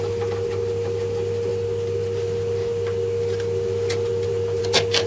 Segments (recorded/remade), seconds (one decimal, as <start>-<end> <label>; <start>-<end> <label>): 0.0-5.1 recorded